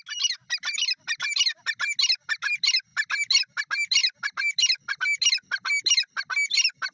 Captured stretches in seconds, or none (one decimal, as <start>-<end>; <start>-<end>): 0.0-6.9